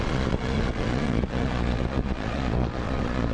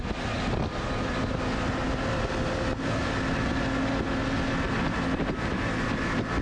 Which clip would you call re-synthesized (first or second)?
first